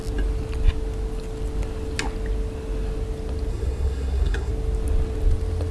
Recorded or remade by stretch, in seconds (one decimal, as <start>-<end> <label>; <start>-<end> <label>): 0.0-3.5 recorded; 3.5-4.5 remade; 4.5-5.7 recorded